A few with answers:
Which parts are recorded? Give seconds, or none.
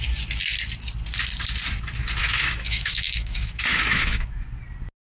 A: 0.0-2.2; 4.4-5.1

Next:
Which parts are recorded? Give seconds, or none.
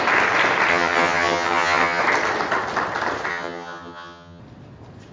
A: 0.0-0.7; 2.0-3.3; 4.4-5.1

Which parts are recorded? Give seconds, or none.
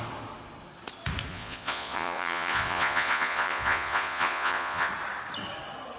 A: 0.0-1.3; 4.9-6.0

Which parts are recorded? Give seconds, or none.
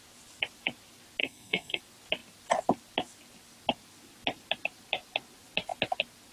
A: 0.0-1.2; 1.8-6.3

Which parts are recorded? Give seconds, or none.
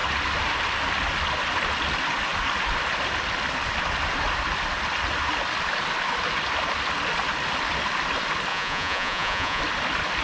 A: 0.0-8.5; 9.6-10.2